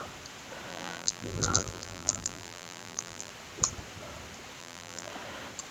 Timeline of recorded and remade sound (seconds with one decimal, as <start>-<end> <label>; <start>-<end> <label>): 0.0-0.7 recorded; 0.7-3.3 remade; 3.3-4.6 recorded; 4.6-5.1 remade; 5.1-5.7 recorded